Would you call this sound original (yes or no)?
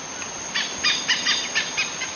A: yes